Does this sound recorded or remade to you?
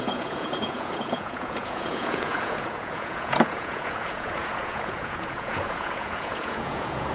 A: remade